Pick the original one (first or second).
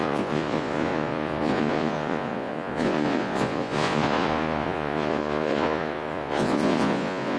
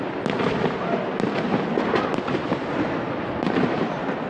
second